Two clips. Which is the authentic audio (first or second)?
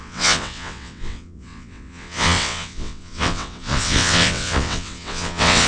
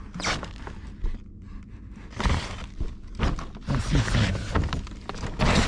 second